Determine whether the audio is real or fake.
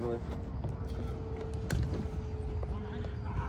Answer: real